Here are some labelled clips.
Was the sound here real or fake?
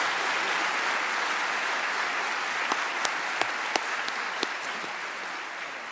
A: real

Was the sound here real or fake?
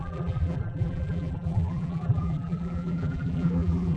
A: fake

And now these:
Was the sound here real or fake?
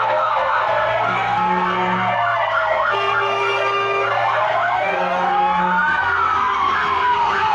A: fake